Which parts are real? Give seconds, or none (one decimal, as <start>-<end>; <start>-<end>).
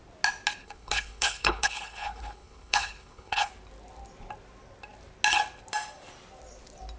0.0-0.6; 3.5-7.0